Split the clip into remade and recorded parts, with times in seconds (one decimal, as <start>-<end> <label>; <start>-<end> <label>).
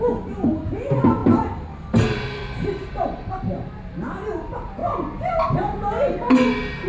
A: 0.0-1.2 recorded; 1.2-3.4 remade; 3.4-6.9 recorded